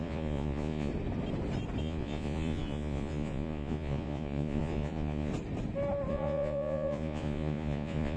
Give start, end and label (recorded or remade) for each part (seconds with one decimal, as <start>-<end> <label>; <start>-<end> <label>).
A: 0.0-0.9 remade; 0.9-1.8 recorded; 1.8-5.3 remade; 5.3-6.1 recorded; 6.1-8.2 remade